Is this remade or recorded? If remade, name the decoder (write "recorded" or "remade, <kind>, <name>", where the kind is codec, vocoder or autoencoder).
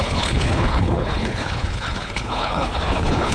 remade, codec, HILCodec